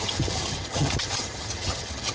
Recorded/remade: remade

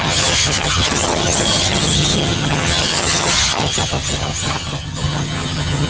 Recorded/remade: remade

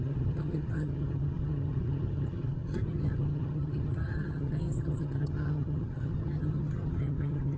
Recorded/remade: remade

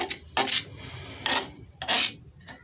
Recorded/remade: recorded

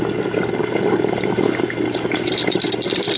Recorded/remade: recorded